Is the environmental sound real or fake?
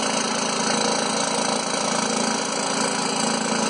real